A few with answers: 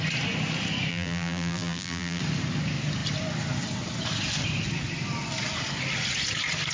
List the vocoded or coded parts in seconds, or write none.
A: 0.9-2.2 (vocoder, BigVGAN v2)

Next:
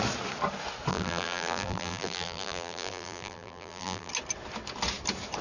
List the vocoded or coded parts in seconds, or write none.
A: 0.9-4.1 (vocoder, BigVGAN v2)

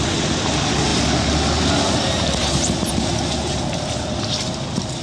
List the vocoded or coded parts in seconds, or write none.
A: 2.4-3.1 (vocoder, BigVGAN v2)

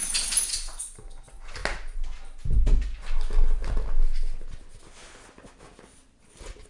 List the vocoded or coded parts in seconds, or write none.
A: none

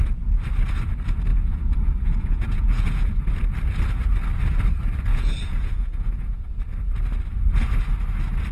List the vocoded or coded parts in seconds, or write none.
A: 1.3-3.3 (vocoder, Vocos); 5.1-6.5

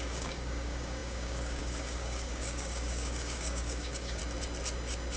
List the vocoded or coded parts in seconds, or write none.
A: 0.0-4.2 (codec, DAC)

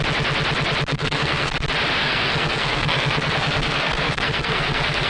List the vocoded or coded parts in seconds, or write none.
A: 0.9-1.5 (codec, SNAC); 2.0-5.1